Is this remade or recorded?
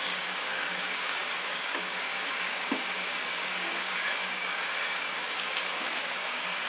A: remade